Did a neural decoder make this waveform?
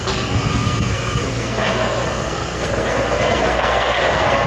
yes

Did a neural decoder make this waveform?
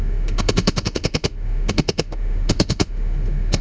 yes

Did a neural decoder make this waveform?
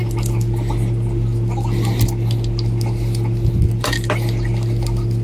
no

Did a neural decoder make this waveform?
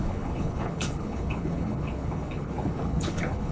yes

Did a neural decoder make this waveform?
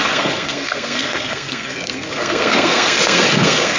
yes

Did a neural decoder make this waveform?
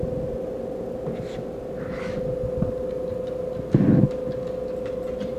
no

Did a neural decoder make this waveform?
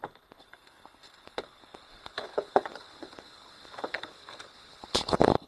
yes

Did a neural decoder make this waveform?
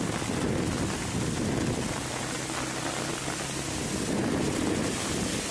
no